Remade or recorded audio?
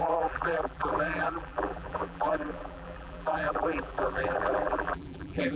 remade